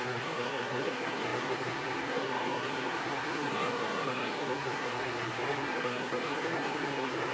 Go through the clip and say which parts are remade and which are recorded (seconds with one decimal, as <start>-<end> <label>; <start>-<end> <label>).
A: 0.0-7.3 remade